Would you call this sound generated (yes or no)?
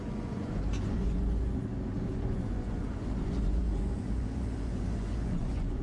yes